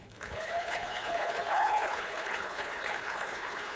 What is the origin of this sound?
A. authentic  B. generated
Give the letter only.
B